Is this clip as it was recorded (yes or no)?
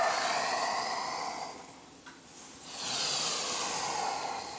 yes